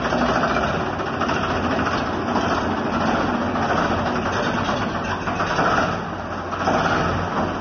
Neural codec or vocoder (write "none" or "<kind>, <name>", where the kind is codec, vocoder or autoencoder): none